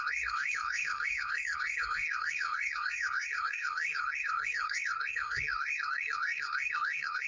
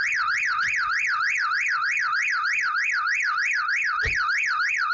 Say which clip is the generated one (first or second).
first